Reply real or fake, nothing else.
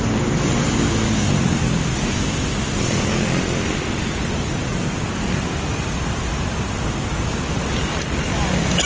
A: fake